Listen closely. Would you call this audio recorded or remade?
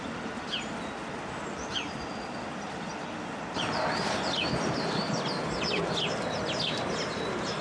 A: recorded